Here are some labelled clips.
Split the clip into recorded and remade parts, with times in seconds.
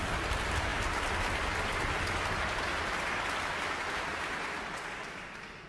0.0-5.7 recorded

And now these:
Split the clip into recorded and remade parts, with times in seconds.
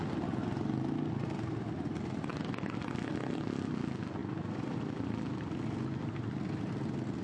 0.0-4.2 recorded; 4.2-4.8 remade; 4.8-7.2 recorded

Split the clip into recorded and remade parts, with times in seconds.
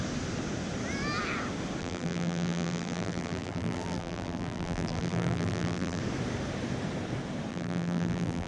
0.0-1.8 recorded; 1.8-6.0 remade; 6.0-7.5 recorded; 7.5-8.5 remade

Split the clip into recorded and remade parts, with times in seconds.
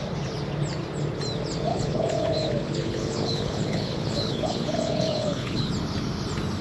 0.0-1.7 recorded; 1.7-5.7 remade; 5.7-6.6 recorded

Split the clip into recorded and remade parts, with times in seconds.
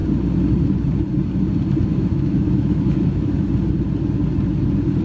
0.0-1.9 recorded; 1.9-3.5 remade; 3.5-5.0 recorded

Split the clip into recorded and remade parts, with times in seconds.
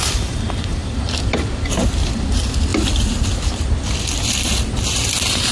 0.0-5.5 recorded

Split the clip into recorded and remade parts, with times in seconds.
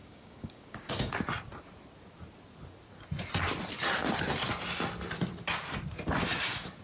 0.0-1.1 remade; 1.1-6.8 recorded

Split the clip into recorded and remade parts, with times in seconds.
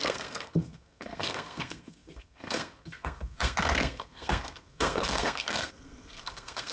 0.0-6.7 remade